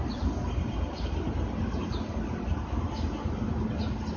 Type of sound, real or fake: real